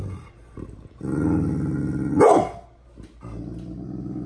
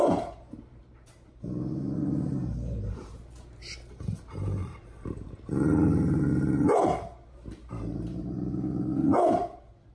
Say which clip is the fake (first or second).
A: second